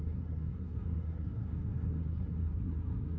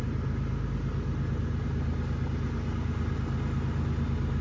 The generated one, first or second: first